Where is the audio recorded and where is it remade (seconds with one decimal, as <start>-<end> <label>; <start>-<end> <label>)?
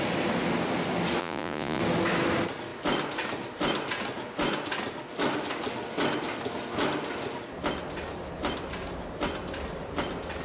0.0-1.2 recorded; 1.2-1.8 remade; 1.8-10.4 recorded